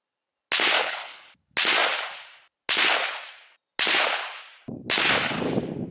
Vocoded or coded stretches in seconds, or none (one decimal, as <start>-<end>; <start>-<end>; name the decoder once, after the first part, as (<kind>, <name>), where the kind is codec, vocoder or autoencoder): 0.8-1.3 (codec, HILCodec)